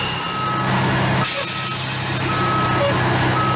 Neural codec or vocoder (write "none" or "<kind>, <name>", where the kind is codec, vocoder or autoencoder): none